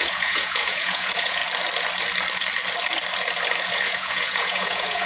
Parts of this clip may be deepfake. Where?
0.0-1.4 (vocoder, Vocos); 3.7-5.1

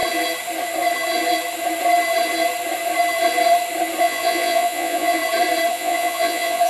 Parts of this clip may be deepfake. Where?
4.0-5.2 (vocoder, Vocos); 5.7-6.7

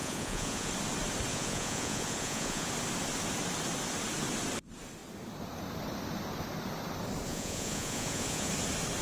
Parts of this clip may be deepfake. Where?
0.0-0.7 (vocoder, Vocos); 1.3-2.7; 7.3-8.5

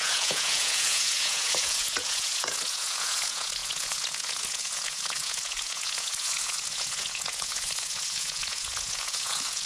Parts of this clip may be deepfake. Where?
0.0-9.7 (vocoder, Vocos)

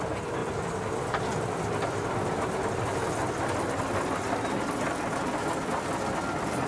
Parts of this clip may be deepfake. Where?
none

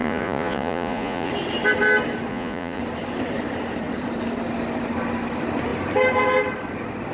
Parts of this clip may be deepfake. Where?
0.0-1.3 (vocoder, Vocos); 2.3-2.8